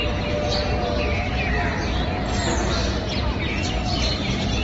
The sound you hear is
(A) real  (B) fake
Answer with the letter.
A